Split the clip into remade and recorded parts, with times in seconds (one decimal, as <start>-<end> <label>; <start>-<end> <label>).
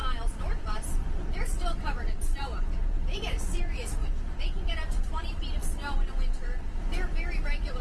0.0-0.6 recorded; 0.6-4.0 remade; 4.0-4.7 recorded; 4.7-5.8 remade; 5.8-7.8 recorded